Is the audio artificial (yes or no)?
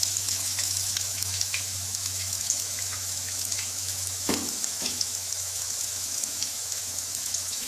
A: yes